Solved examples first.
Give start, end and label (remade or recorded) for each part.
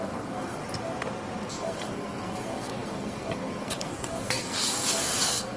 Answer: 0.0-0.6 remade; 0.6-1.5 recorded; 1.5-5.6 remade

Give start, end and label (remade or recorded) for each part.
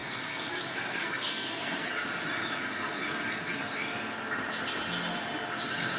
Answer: 0.0-1.9 remade; 1.9-6.0 recorded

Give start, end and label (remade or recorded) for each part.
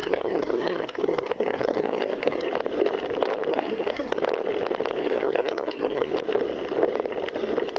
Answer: 0.0-2.5 remade; 2.5-3.5 recorded; 3.5-4.2 remade; 4.2-5.0 recorded; 5.0-6.1 remade; 6.1-7.8 recorded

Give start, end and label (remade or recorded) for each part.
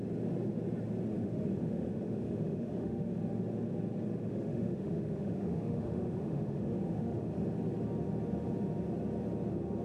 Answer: 0.0-1.1 recorded; 1.1-3.2 remade; 3.2-4.2 recorded; 4.2-7.3 remade; 7.3-9.8 recorded